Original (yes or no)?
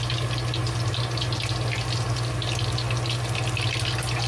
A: yes